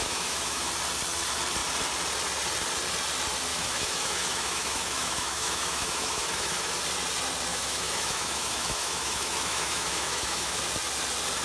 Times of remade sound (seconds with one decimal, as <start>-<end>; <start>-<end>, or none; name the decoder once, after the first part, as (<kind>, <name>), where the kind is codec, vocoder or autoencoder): 0.0-0.7 (autoencoder, DAC-VAE); 3.5-6.8; 7.5-10.6